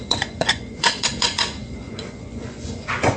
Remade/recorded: remade